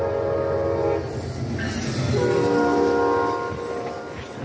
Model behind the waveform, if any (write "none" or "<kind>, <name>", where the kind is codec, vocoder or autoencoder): none